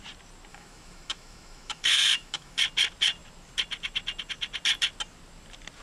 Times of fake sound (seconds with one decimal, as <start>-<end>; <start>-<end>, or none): 0.5-2.6